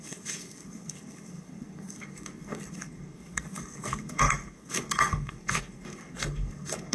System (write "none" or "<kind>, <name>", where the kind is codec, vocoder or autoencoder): codec, SNAC